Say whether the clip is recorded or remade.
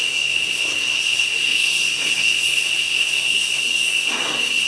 remade